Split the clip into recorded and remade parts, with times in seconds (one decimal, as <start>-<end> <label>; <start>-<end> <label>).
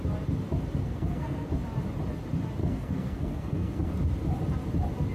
0.0-0.8 recorded; 0.8-1.5 remade; 1.5-2.6 recorded; 2.6-3.9 remade; 3.9-5.1 recorded